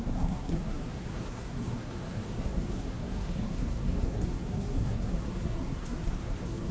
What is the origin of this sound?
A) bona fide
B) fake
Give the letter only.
B